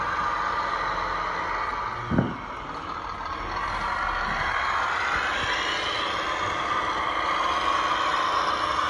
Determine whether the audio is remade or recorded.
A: recorded